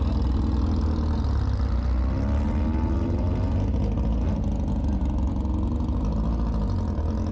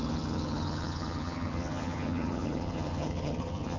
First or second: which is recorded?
first